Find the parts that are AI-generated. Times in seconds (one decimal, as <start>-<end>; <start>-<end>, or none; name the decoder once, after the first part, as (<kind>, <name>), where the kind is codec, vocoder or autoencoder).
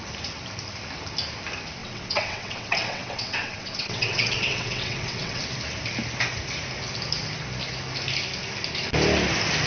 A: 1.8-5.4 (vocoder, WaveNeXt)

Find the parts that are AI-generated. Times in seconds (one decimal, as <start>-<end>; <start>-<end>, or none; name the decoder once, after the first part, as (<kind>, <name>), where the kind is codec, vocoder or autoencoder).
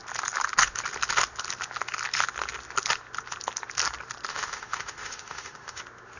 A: 4.3-5.8 (autoencoder, DAC-VAE)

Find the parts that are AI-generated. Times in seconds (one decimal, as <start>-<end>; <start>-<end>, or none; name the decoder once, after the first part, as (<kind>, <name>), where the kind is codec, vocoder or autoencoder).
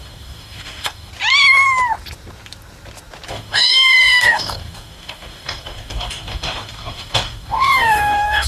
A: 0.0-1.1 (codec, DAC); 3.3-8.5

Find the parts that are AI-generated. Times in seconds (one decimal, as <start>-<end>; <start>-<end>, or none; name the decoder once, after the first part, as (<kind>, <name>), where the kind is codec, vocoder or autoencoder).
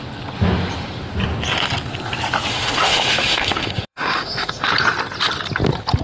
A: 2.5-4.7 (autoencoder, DAC-VAE)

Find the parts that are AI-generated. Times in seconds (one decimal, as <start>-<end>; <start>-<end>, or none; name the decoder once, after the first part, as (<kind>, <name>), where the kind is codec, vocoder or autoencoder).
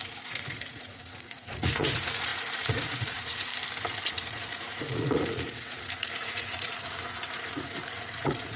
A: 0.0-3.5 (vocoder, Vocos); 4.1-8.6